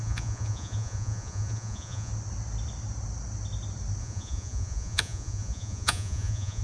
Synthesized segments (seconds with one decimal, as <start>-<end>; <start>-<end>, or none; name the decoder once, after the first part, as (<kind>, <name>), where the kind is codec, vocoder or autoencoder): 0.0-2.1 (vocoder, Vocos); 4.0-6.6